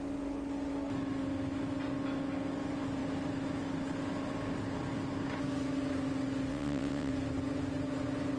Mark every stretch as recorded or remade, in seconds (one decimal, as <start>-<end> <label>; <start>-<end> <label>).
0.0-6.5 recorded; 6.5-7.1 remade; 7.1-8.4 recorded